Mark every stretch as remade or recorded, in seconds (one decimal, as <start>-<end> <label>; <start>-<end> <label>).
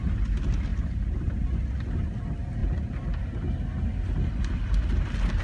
0.0-0.7 recorded; 0.7-1.3 remade; 1.3-5.4 recorded